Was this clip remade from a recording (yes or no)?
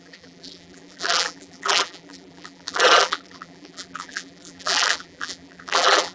yes